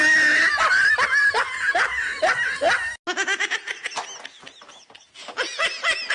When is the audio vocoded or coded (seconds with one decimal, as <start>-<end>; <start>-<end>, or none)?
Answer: none